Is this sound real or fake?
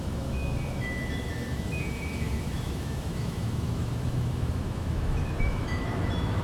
fake